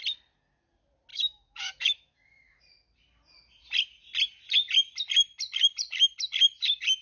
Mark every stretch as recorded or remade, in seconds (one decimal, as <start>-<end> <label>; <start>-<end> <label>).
0.0-1.1 recorded; 1.1-2.6 remade; 2.6-7.0 recorded